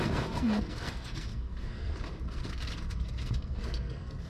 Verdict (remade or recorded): remade